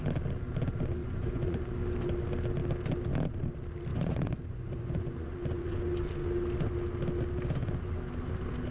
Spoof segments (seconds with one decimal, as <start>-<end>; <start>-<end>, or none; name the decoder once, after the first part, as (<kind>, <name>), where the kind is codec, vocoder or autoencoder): 1.0-1.6 (vocoder, Vocos); 3.9-5.8